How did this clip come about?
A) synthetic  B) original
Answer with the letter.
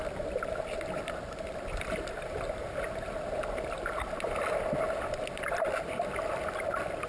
B